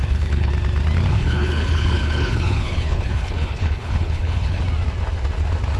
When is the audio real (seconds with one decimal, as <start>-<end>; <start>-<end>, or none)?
0.5-1.1; 4.6-5.8